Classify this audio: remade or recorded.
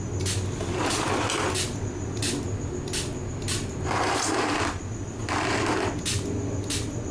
recorded